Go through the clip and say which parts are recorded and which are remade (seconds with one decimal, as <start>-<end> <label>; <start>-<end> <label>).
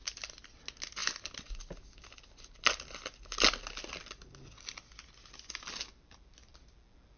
0.0-7.2 recorded